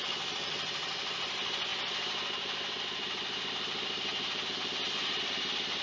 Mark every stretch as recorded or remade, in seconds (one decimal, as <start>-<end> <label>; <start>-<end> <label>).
0.0-5.8 recorded